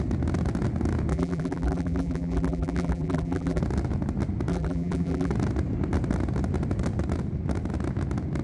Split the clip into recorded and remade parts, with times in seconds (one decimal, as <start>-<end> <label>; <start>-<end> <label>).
0.0-1.1 recorded; 1.1-3.6 remade; 3.6-4.5 recorded; 4.5-5.3 remade; 5.3-8.4 recorded